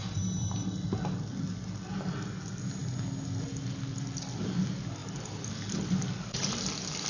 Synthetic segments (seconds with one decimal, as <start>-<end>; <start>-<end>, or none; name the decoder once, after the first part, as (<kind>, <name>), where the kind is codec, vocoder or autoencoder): none